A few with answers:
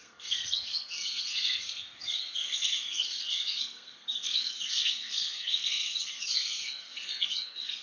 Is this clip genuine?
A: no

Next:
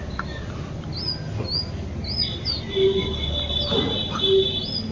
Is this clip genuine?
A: yes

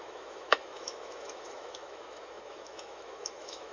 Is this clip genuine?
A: no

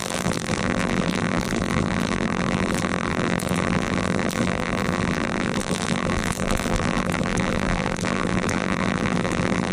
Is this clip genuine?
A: no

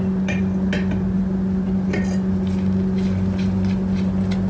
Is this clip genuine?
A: yes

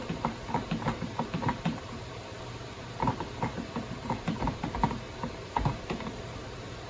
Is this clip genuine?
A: no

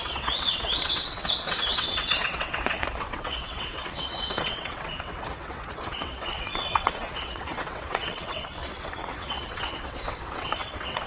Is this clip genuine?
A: no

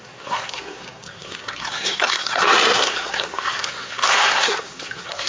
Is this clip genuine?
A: no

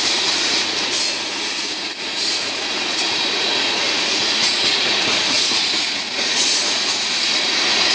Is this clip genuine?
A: no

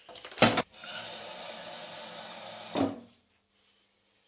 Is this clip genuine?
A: yes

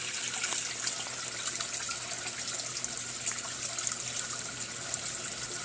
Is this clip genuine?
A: yes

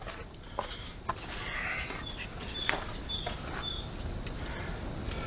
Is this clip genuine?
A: yes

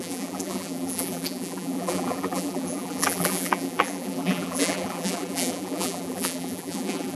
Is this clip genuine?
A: no